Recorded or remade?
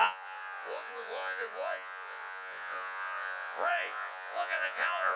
remade